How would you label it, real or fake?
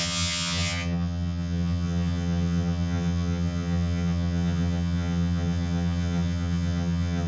fake